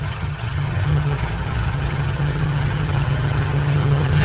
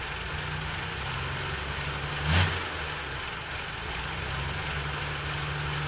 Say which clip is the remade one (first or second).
first